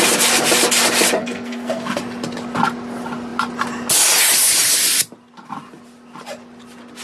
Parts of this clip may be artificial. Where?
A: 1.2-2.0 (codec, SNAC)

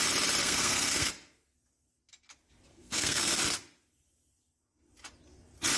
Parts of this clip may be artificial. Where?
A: 0.4-1.1 (codec, SNAC); 2.7-3.4

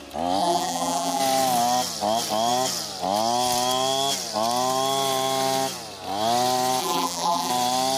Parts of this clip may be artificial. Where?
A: 0.4-1.2 (vocoder, BigVGAN v2); 6.8-7.5

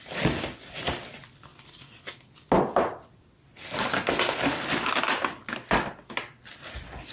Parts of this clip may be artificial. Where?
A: none

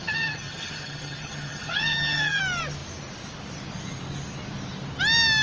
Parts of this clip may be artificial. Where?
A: 0.0-2.4 (vocoder, HiFi-GAN)

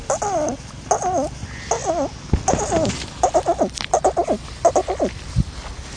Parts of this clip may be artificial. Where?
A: none

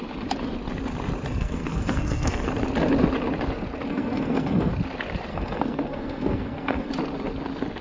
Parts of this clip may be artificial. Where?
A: 1.3-2.5 (codec, SNAC); 3.9-4.7; 5.3-6.9